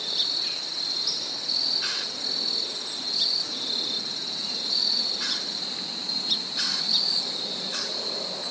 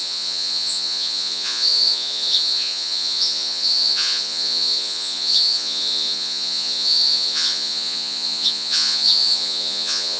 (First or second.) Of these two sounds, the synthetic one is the second